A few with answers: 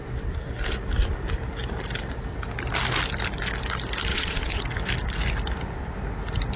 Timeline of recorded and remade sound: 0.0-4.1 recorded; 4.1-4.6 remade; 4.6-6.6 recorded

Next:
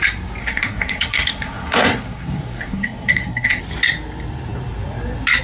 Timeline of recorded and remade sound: 0.0-0.4 recorded; 0.4-3.6 remade; 3.6-5.4 recorded

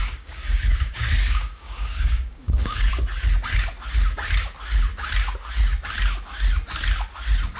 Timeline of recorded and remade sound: 0.0-2.9 remade; 2.9-7.6 recorded